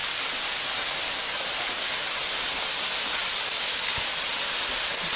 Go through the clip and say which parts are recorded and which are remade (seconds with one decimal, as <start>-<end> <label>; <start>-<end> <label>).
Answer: 0.0-5.2 recorded